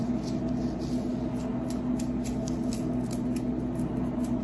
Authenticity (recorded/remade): recorded